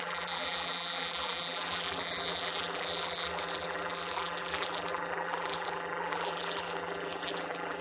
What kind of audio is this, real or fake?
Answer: fake